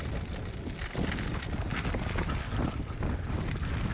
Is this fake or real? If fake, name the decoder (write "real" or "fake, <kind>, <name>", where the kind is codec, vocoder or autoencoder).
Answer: real